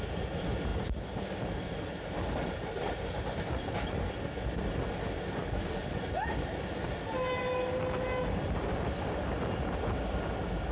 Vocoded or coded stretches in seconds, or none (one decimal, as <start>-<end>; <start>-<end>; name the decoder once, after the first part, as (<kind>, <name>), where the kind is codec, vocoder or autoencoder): 5.4-6.0 (codec, DAC)

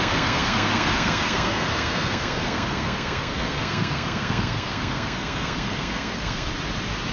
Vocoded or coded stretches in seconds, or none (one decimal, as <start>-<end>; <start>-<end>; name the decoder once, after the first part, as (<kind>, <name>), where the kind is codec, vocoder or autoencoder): 0.0-6.5 (codec, SNAC)

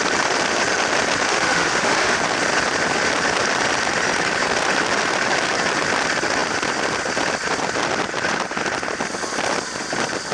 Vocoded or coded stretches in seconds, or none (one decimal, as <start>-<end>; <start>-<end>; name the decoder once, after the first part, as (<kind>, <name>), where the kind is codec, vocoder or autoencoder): 1.3-2.2 (autoencoder, DAC-VAE)

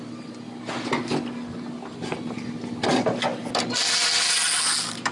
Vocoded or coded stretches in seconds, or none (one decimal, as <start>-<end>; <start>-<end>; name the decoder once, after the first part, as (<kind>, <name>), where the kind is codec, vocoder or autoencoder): none

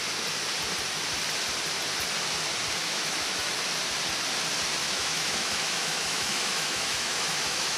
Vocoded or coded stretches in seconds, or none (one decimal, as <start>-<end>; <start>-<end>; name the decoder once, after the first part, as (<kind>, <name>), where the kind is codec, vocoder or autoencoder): 2.8-3.5 (autoencoder, DAC-VAE); 4.8-7.8

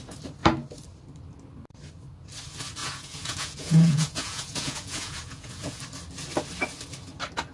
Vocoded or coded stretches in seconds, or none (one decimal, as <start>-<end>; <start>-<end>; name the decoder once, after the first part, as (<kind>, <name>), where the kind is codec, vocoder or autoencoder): 2.8-5.8 (vocoder, Vocos)

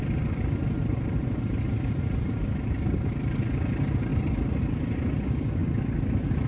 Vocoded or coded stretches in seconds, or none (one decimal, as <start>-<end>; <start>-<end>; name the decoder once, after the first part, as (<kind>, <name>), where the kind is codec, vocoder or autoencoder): none